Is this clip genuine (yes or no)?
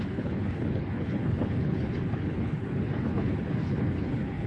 no